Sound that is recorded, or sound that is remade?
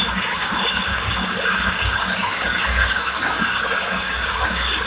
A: remade